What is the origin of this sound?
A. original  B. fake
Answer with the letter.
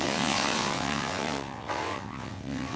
B